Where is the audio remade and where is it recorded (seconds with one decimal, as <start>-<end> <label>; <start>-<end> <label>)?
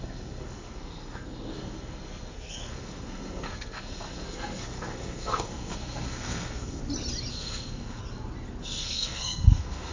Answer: 0.0-6.8 remade; 6.8-7.3 recorded; 7.3-8.0 remade; 8.0-8.6 recorded; 8.6-9.9 remade